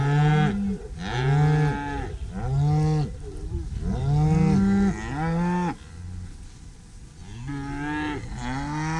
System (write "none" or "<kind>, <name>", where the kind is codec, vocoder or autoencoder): none